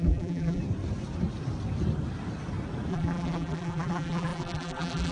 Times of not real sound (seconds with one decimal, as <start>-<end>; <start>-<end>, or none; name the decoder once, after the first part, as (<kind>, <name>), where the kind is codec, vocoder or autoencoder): 0.0-0.6 (vocoder, BigVGAN v2); 2.9-5.1